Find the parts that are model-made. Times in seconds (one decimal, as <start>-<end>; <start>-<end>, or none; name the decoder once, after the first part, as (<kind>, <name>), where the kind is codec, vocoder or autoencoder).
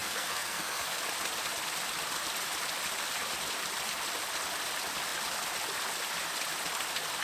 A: 0.0-1.0 (codec, SNAC)